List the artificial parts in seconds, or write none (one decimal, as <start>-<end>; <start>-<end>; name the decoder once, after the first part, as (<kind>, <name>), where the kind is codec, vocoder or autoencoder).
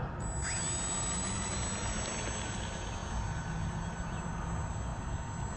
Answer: none